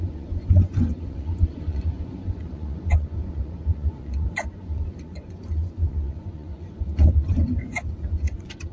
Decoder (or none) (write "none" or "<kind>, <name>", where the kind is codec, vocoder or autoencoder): vocoder, Vocos